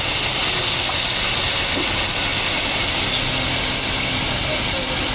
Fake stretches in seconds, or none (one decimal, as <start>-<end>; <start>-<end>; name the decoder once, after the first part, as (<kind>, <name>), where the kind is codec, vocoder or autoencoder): none